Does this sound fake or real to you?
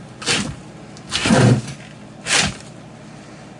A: real